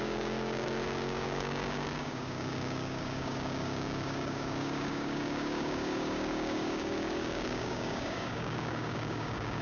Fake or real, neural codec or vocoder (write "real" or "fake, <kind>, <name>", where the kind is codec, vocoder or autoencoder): fake, codec, DAC